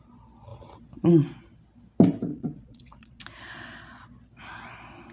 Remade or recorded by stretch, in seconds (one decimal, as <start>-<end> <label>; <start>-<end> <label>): 0.0-2.3 recorded; 2.3-3.2 remade; 3.2-5.1 recorded